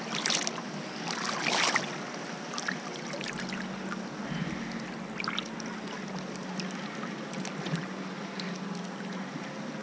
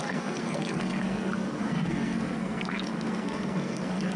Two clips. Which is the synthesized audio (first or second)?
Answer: second